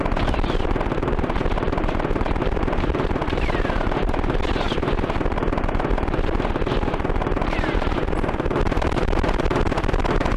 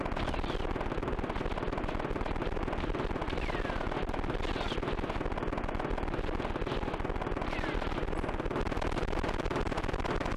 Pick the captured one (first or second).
second